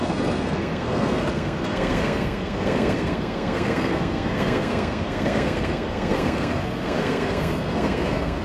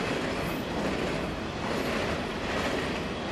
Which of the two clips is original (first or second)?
second